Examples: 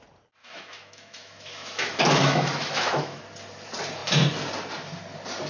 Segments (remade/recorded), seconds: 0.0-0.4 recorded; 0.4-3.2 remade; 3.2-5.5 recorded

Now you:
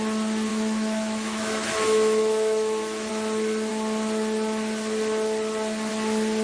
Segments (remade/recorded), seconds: 0.0-0.5 recorded; 0.5-3.1 remade; 3.1-6.4 recorded